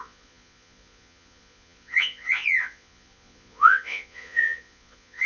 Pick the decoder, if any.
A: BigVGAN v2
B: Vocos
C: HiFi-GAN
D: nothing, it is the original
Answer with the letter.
B